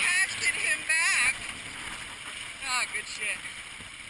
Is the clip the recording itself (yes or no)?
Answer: yes